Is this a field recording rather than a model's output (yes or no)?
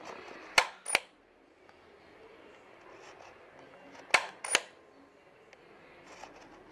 yes